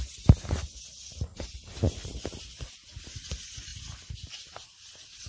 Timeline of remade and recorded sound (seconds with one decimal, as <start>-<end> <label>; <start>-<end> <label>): 0.0-5.3 recorded